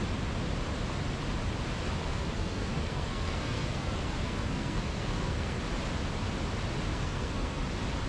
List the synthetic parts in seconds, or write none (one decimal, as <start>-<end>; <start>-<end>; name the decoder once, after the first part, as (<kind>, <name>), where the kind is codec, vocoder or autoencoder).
2.0-5.6 (codec, SNAC); 6.9-7.6